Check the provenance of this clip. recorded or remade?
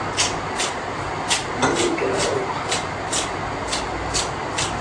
recorded